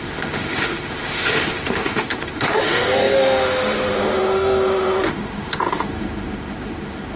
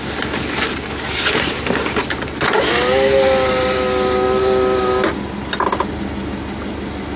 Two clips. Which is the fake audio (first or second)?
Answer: first